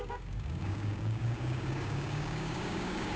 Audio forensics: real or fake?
fake